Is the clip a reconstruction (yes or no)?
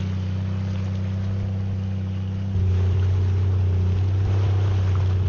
no